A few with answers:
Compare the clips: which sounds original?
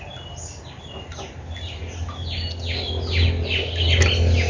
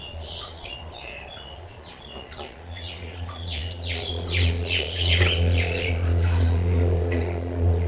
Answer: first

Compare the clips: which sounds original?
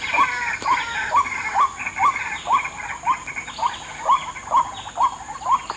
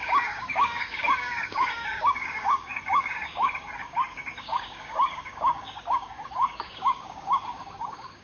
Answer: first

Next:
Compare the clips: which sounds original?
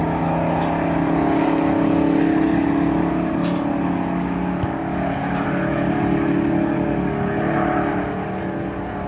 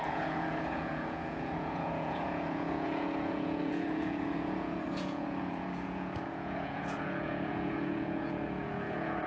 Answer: first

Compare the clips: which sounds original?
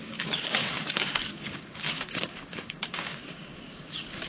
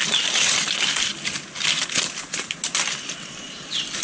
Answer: second